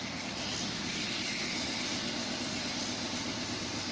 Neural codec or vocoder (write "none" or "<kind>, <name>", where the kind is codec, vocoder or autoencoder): none